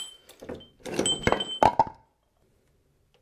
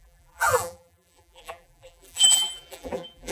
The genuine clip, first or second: first